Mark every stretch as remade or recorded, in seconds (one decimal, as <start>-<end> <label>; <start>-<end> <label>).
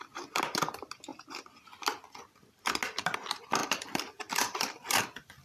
0.0-3.6 recorded; 3.6-5.0 remade; 5.0-5.4 recorded